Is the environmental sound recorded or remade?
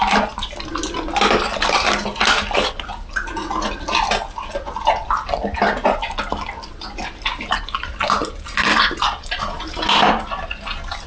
recorded